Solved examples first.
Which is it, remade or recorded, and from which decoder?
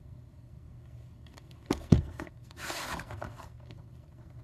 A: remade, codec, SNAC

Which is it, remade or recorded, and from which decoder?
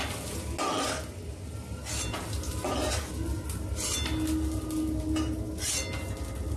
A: recorded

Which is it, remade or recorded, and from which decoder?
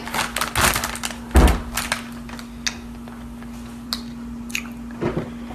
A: recorded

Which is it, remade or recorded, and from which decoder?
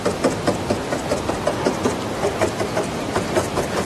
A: remade, vocoder, BigVGAN v2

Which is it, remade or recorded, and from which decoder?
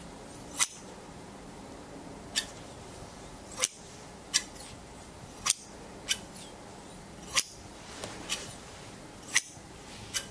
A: recorded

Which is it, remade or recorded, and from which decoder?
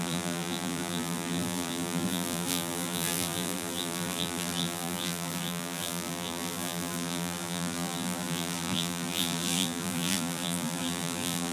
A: remade, vocoder, BigVGAN v2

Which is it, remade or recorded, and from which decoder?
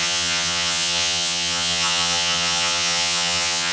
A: remade, vocoder, HiFi-GAN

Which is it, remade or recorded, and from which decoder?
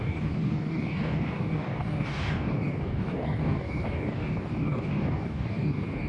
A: remade, codec, DAC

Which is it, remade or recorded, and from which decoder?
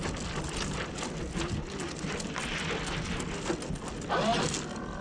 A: recorded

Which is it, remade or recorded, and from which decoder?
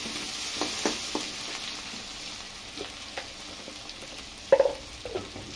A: recorded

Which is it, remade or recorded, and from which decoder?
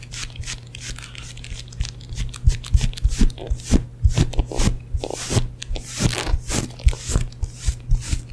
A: recorded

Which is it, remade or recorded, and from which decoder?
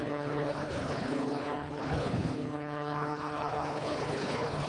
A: remade, codec, HILCodec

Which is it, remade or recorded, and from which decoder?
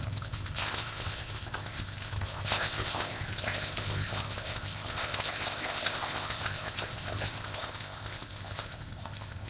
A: remade, codec, ZipCodec